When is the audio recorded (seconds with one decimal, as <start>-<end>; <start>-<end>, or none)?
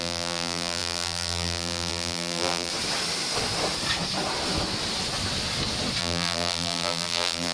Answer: 2.7-6.0